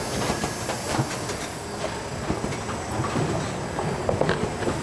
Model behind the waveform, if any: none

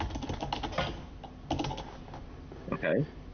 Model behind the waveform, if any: none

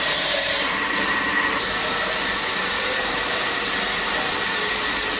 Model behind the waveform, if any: vocoder, BigVGAN v2